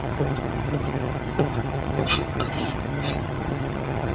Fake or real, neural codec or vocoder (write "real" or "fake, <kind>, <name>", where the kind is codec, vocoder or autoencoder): fake, vocoder, HiFi-GAN